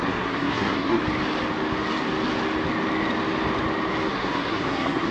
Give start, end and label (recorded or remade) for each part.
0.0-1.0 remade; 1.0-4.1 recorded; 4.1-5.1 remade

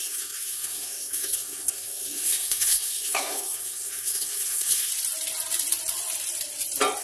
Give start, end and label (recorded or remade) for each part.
0.0-4.9 remade; 4.9-7.0 recorded

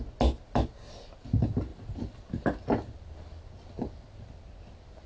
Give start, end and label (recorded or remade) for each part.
0.0-1.7 recorded; 1.7-4.3 remade; 4.3-5.1 recorded

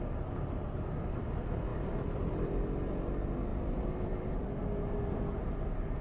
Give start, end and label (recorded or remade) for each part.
0.0-1.7 recorded; 1.7-2.3 remade; 2.3-3.5 recorded; 3.5-4.4 remade; 4.4-6.0 recorded

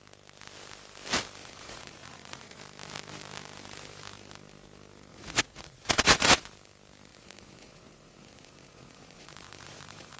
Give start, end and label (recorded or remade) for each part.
0.0-1.4 recorded; 1.4-2.6 remade; 2.6-5.1 recorded; 5.1-6.4 remade; 6.4-7.1 recorded; 7.1-10.2 remade

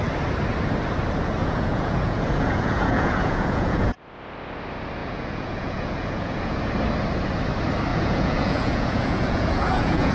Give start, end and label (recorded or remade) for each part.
0.0-1.4 recorded; 1.4-4.0 remade; 4.0-5.0 recorded; 5.0-6.6 remade; 6.6-7.9 recorded; 7.9-10.1 remade

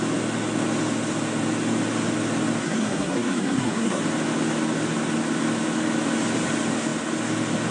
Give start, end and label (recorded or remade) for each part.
0.0-2.6 recorded; 2.6-4.0 remade; 4.0-7.7 recorded

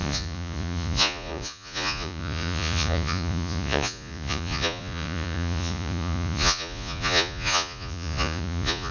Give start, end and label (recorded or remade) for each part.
0.0-8.9 remade